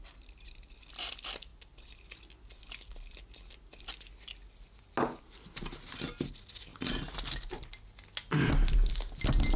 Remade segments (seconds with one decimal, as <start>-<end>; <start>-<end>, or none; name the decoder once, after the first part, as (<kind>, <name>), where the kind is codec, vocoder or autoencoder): none